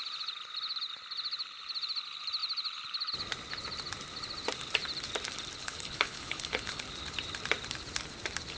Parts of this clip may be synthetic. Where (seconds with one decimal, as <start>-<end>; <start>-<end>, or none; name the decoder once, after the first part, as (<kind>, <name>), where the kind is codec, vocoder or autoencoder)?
5.6-6.8 (codec, HILCodec)